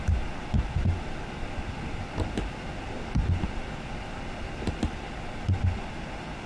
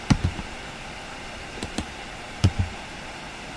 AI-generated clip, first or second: second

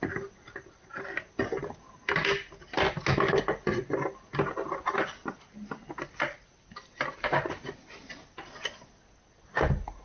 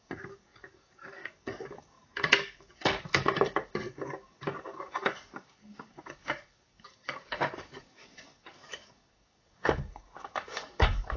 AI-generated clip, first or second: second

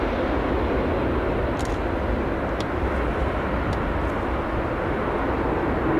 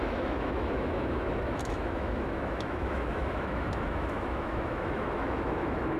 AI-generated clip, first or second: second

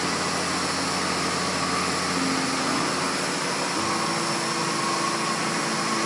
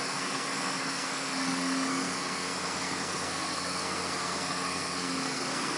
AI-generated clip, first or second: second